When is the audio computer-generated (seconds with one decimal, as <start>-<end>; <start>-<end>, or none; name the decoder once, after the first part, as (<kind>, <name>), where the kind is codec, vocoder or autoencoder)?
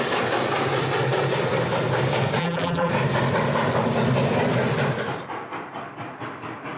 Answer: 2.4-2.9 (vocoder, BigVGAN v2)